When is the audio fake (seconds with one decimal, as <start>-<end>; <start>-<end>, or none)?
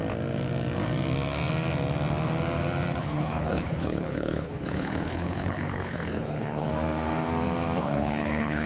3.0-6.7; 7.8-8.7